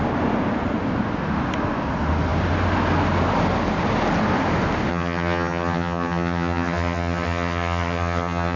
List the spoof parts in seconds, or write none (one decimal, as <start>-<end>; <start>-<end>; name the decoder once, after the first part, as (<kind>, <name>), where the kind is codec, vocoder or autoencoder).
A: 4.9-8.6 (vocoder, HiFi-GAN)